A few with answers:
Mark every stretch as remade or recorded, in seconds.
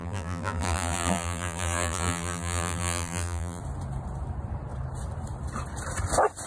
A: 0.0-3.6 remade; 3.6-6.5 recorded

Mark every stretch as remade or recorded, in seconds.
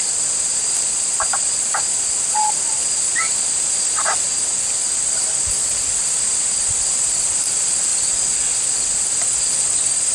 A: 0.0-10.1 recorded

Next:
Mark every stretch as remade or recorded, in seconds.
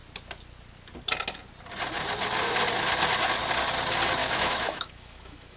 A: 0.0-4.2 recorded; 4.2-5.6 remade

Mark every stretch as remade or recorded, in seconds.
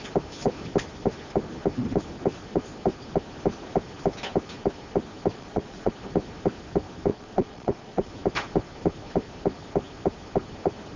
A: 0.0-5.3 recorded; 5.3-5.9 remade; 5.9-7.1 recorded; 7.1-8.1 remade; 8.1-11.0 recorded